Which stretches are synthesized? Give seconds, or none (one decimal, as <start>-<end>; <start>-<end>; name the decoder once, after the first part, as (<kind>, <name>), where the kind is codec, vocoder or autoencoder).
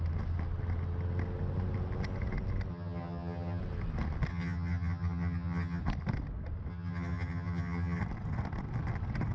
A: 2.7-3.6 (vocoder, HiFi-GAN); 4.3-5.8; 6.7-8.0